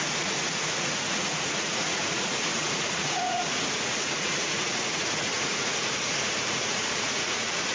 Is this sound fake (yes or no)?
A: yes